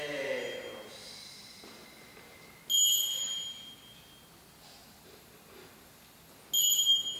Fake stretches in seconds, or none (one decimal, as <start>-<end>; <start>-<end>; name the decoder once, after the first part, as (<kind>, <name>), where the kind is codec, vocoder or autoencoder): 4.8-6.4 (vocoder, BigVGAN v2)